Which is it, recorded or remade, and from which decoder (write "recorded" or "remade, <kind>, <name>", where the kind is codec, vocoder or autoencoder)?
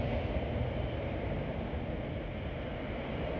recorded